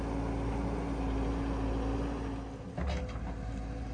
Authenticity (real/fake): real